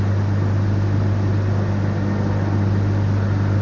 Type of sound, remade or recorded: recorded